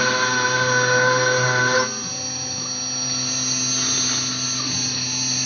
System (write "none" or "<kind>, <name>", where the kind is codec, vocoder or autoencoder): none